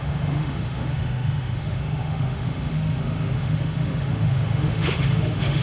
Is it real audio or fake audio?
fake